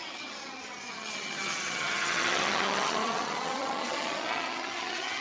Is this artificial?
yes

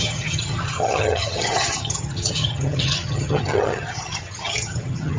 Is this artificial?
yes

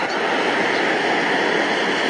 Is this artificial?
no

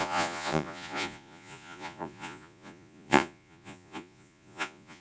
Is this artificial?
yes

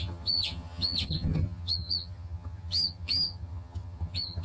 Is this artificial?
yes